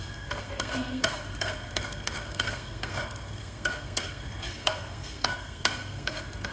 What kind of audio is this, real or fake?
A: fake